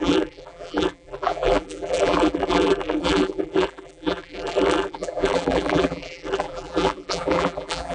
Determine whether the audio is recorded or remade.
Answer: remade